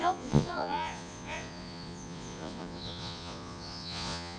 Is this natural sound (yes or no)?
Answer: no